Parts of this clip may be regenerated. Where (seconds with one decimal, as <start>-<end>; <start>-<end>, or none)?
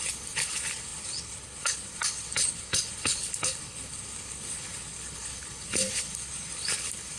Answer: 0.0-7.2